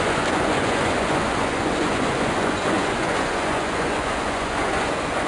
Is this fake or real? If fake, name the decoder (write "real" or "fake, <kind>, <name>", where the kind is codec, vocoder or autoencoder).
fake, vocoder, Vocos